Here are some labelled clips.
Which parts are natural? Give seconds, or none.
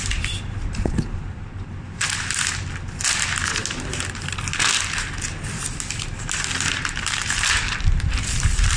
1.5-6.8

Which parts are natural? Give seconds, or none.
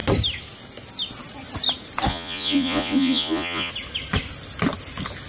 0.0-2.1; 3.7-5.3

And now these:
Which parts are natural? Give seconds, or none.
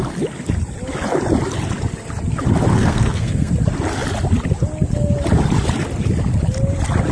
0.0-2.7; 3.5-7.1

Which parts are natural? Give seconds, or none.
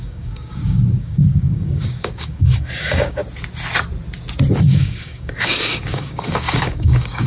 3.2-4.6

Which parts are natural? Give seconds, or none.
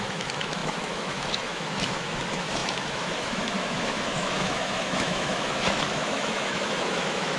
none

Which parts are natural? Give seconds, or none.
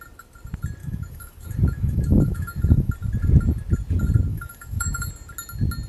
0.0-0.8; 2.9-4.3; 5.1-5.9